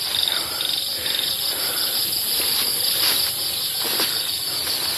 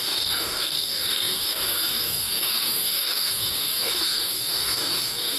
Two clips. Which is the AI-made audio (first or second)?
second